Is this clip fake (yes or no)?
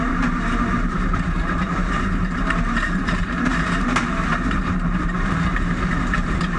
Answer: yes